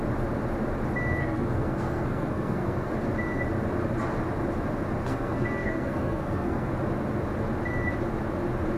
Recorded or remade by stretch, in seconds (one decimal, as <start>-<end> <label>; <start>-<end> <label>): 0.0-1.2 recorded; 1.2-2.9 remade; 2.9-5.1 recorded; 5.1-6.7 remade; 6.7-8.8 recorded